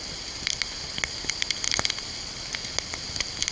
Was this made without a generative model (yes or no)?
yes